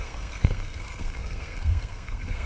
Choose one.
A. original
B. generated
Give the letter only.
B